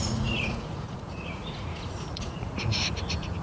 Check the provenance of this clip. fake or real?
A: fake